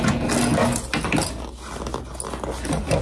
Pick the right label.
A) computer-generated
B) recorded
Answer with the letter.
B